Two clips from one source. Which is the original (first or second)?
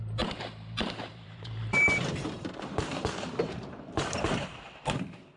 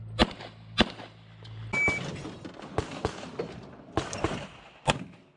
second